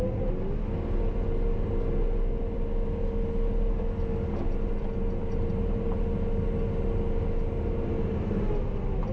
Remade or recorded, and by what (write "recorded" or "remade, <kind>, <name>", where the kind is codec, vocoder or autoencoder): recorded